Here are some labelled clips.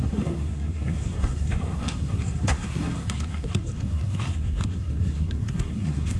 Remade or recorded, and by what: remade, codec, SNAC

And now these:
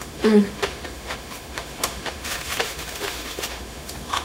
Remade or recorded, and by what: remade, autoencoder, DAC-VAE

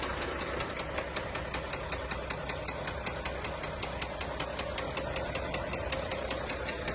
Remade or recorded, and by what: recorded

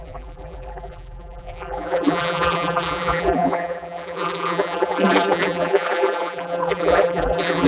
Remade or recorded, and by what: remade, vocoder, BigVGAN v2